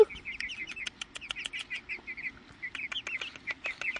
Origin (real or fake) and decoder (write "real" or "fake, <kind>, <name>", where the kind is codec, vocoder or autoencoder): real